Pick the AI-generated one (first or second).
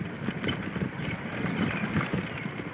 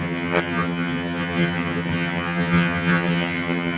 second